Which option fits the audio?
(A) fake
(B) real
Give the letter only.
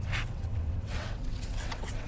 A